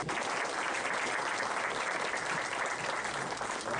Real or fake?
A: real